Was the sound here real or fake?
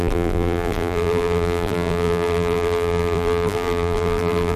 fake